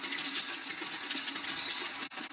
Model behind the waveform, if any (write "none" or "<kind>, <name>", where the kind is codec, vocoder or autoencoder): none